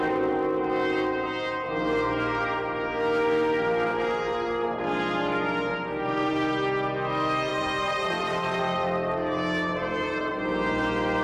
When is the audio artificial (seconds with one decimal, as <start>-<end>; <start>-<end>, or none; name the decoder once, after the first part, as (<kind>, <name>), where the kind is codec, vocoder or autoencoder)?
3.9-4.8 (vocoder, BigVGAN v2); 7.5-8.6; 9.7-10.3